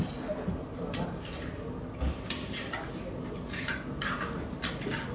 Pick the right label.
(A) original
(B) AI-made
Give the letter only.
A